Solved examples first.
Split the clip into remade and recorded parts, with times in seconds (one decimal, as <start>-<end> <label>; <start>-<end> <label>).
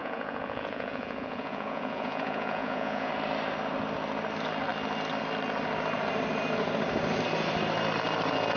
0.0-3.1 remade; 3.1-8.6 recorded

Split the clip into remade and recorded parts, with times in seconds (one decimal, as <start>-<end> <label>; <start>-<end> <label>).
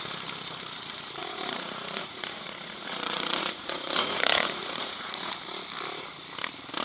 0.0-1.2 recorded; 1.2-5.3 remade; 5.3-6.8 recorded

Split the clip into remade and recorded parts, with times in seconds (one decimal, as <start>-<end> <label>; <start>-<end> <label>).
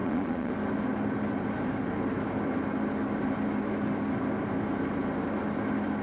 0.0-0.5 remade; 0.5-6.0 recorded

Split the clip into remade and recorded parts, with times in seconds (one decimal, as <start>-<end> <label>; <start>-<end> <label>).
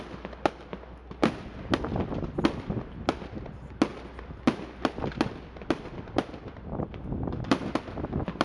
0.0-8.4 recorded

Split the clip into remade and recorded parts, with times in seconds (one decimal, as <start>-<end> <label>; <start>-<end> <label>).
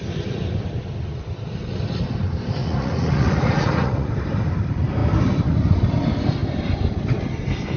0.0-2.6 recorded; 2.6-4.1 remade; 4.1-7.8 recorded